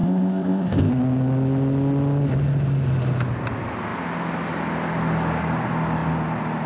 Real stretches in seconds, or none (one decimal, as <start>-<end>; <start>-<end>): 0.9-6.7